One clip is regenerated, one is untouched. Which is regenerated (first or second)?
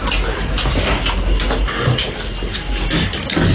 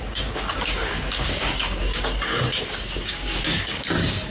second